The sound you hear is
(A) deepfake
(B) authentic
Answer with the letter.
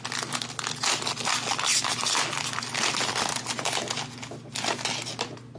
B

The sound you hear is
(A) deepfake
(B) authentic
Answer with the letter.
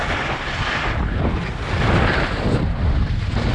B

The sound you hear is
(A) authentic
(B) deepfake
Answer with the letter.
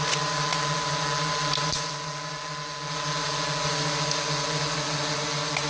A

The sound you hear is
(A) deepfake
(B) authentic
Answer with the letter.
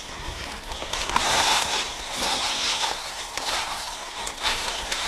A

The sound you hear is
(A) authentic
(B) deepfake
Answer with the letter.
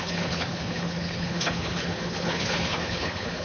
B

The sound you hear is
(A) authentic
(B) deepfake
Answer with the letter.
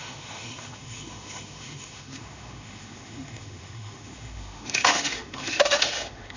B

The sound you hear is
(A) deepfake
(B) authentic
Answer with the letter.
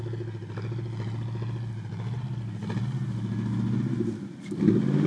B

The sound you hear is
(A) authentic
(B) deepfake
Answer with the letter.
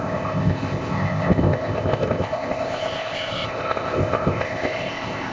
B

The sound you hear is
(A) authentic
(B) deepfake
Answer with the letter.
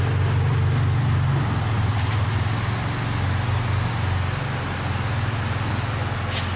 A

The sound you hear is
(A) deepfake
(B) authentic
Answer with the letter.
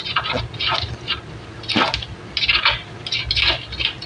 B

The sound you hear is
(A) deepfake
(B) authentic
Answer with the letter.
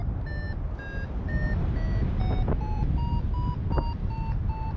B